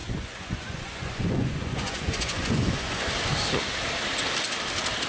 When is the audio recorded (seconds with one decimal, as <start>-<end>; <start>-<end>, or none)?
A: 3.1-5.1